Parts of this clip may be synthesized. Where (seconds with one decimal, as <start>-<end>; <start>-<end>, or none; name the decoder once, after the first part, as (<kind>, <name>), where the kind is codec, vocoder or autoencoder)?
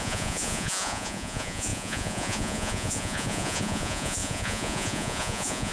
0.0-5.7 (vocoder, Vocos)